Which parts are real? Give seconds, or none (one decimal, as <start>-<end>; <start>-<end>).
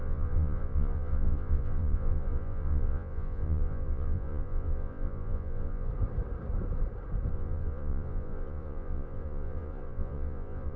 5.9-7.3